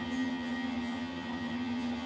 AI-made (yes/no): yes